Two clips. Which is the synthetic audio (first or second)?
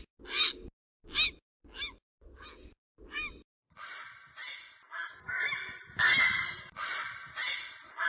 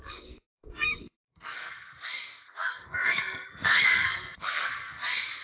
second